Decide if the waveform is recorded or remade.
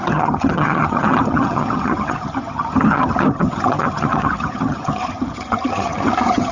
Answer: remade